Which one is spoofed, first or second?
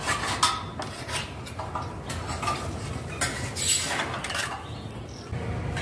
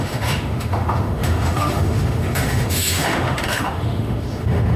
second